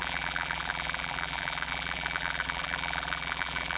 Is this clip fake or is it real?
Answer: fake